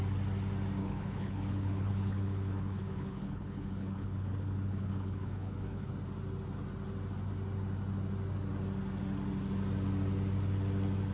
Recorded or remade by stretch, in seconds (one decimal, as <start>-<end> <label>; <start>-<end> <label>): 0.0-0.8 recorded; 0.8-5.9 remade; 5.9-11.1 recorded